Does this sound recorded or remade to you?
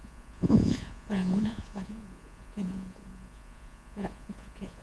remade